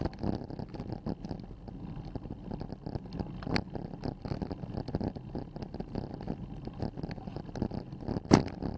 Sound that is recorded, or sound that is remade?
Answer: recorded